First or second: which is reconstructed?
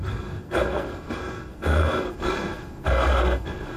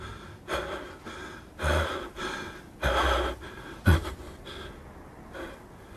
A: first